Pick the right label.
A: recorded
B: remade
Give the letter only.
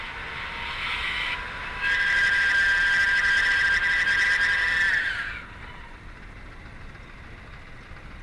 A